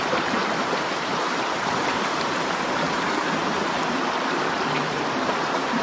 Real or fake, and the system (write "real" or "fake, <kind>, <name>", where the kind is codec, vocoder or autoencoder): fake, vocoder, BigVGAN v2